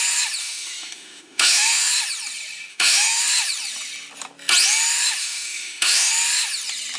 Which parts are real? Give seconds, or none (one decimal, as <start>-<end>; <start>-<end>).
0.0-0.4; 1.9-2.7; 3.2-5.2; 6.1-7.0

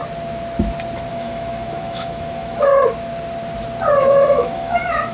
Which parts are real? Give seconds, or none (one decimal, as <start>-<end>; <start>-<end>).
0.0-1.1; 2.7-4.0

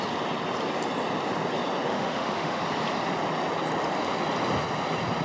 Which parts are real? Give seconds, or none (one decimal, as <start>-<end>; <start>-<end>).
0.0-1.9; 2.6-5.2